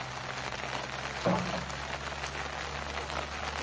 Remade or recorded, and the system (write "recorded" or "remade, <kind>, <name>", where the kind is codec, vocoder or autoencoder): recorded